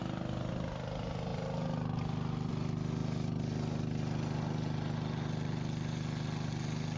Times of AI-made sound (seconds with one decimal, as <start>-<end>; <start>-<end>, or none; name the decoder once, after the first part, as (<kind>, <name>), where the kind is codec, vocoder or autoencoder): none

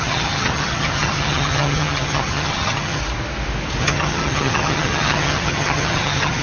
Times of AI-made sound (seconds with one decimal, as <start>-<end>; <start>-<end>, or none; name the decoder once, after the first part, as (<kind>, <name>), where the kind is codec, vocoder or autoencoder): 0.0-3.0 (vocoder, HiFi-GAN); 3.8-6.4